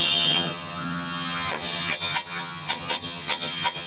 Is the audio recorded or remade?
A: remade